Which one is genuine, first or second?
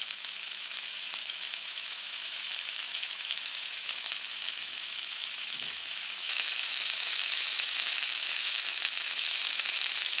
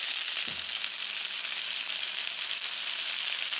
second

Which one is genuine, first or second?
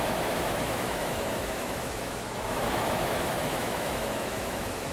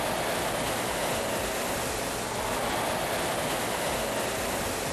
second